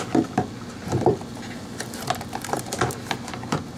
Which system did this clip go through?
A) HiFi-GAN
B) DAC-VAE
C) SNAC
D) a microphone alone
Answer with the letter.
D